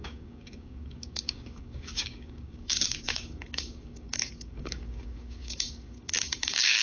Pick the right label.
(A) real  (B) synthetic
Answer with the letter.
B